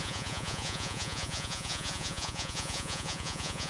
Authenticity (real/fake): fake